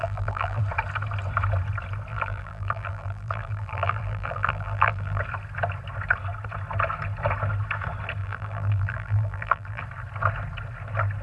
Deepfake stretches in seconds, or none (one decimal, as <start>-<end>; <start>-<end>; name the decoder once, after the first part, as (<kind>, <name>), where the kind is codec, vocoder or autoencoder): 0.0-0.6 (vocoder, BigVGAN v2); 2.1-5.2; 8.2-9.8

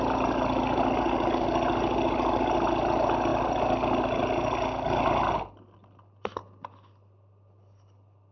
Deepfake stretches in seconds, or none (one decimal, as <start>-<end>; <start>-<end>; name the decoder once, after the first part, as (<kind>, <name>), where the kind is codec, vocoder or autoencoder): none

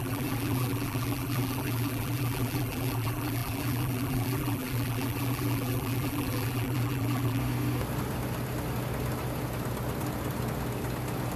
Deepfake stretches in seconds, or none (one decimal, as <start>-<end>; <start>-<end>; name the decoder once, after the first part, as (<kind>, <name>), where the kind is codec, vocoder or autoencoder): 0.0-7.4 (vocoder, BigVGAN v2)

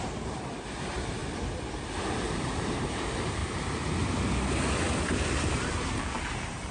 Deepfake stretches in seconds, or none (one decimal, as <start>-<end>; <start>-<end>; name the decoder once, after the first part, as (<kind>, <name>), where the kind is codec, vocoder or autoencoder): 0.0-1.2 (vocoder, BigVGAN v2); 2.1-3.4; 5.9-6.7